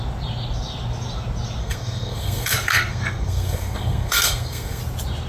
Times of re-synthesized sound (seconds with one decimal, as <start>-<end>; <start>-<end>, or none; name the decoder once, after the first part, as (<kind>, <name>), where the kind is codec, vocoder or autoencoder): 1.6-4.8 (codec, SNAC)